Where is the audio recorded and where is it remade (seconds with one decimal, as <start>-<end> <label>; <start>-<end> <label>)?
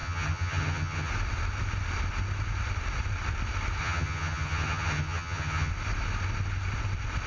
0.0-1.1 remade; 1.1-3.8 recorded; 3.8-5.7 remade; 5.7-7.3 recorded